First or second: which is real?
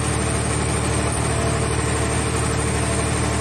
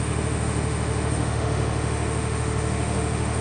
first